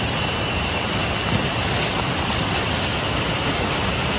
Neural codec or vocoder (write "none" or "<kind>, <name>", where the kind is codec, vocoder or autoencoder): none